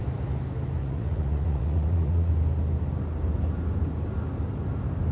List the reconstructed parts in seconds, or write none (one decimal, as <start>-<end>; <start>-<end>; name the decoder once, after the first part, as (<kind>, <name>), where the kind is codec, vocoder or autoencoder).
0.8-2.3 (vocoder, Vocos)